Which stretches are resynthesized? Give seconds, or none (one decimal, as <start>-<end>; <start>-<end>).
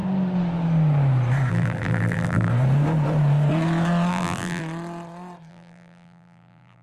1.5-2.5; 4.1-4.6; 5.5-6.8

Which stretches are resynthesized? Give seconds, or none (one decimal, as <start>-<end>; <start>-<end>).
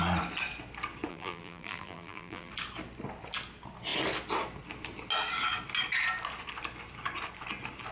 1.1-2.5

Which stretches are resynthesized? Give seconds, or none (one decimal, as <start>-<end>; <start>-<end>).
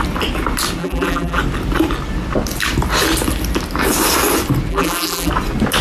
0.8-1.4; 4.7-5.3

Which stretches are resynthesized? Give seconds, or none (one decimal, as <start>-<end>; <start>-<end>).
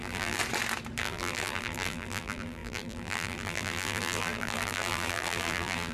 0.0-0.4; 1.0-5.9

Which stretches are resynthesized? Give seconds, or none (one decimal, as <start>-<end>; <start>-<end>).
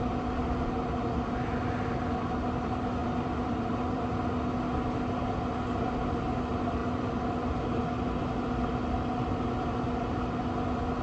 3.0-4.3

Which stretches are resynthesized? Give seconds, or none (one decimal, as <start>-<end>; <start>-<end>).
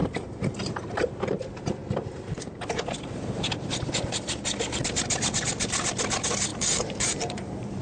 0.0-1.4; 6.5-7.8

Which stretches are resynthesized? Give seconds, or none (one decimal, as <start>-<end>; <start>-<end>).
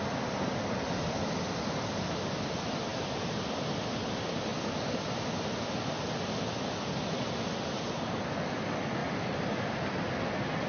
9.0-10.2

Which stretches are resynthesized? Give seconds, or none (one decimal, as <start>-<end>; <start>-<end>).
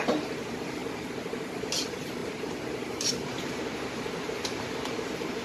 0.0-0.8; 1.6-5.4